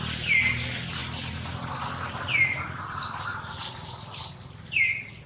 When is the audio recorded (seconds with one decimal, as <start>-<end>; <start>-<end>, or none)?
0.0-5.3